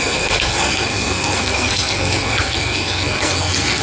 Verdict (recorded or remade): remade